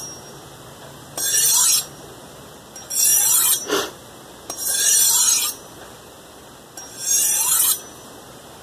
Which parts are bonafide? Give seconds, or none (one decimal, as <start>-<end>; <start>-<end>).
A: 0.0-8.6